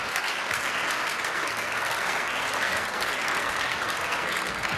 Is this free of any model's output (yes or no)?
no